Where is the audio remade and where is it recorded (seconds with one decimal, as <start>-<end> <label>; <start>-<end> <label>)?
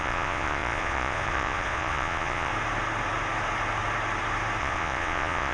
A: 0.0-2.5 remade; 2.5-4.6 recorded; 4.6-5.5 remade